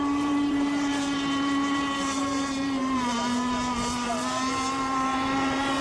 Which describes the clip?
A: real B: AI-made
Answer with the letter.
B